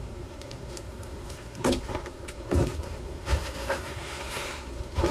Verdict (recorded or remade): remade